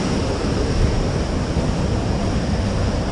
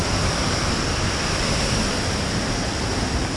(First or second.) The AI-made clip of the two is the second